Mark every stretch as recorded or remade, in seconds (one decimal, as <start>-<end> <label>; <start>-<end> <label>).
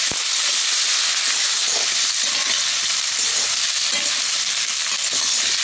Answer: 0.0-5.6 recorded